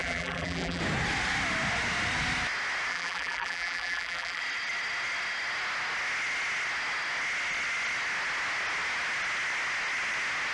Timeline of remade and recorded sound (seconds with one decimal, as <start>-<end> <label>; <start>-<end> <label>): 0.0-0.8 remade; 0.8-2.9 recorded; 2.9-4.4 remade; 4.4-10.5 recorded